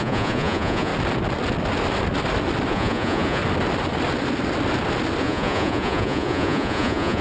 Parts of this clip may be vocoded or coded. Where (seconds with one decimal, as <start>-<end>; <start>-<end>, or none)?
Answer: 0.0-0.9; 2.7-3.4; 5.2-7.2